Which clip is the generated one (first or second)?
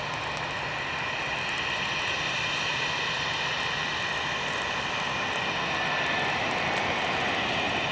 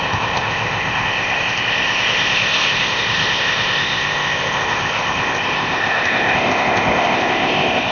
second